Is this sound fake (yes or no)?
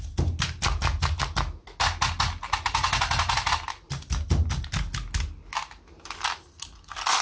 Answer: no